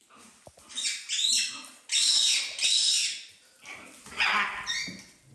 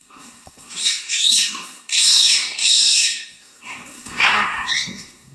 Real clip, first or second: first